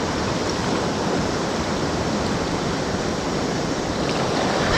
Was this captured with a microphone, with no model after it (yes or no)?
no